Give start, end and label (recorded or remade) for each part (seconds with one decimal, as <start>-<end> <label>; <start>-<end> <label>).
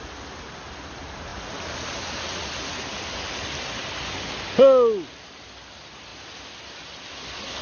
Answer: 0.0-7.6 recorded